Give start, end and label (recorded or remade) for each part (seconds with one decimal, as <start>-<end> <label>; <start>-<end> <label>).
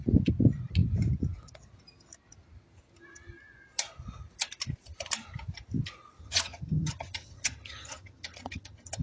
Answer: 0.0-6.2 recorded; 6.2-9.0 remade